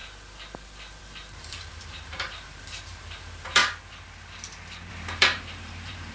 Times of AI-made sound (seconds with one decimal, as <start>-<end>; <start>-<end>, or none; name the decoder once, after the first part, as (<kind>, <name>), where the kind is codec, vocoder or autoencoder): 1.0-3.6 (vocoder, BigVGAN v2); 4.9-6.1